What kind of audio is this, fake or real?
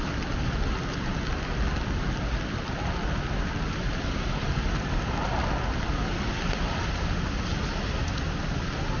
real